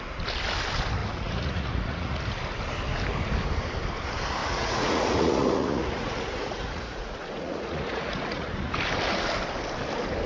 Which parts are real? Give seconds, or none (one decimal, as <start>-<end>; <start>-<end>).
0.0-1.0; 2.2-4.4; 8.7-10.3